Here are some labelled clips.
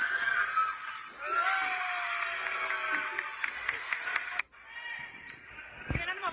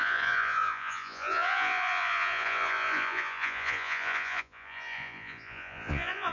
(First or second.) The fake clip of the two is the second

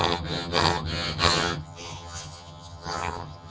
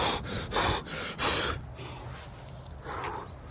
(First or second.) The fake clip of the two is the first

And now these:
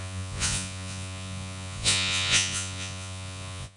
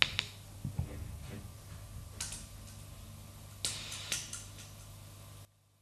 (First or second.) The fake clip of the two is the first